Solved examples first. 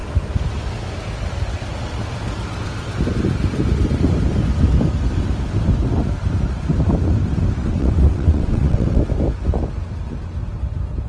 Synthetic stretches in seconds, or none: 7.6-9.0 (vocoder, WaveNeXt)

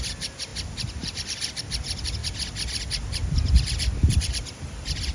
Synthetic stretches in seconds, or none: 0.0-2.2 (vocoder, BigVGAN v2); 3.5-5.1

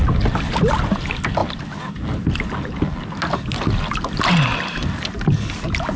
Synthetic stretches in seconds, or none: none

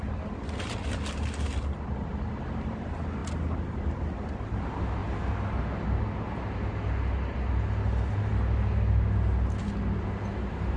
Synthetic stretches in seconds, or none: none

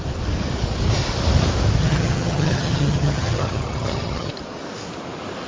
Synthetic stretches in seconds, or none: 1.8-4.3 (vocoder, HiFi-GAN)

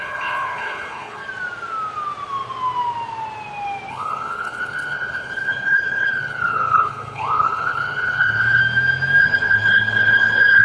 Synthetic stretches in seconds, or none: 0.0-1.2 (codec, HILCodec); 3.9-8.6; 9.2-10.6